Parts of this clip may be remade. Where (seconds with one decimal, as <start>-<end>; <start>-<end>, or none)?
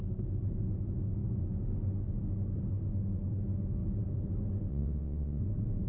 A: 4.7-5.4